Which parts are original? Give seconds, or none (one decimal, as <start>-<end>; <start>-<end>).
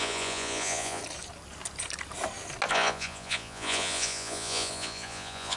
1.0-2.7